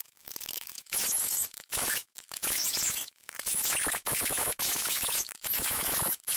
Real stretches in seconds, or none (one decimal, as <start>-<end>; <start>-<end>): none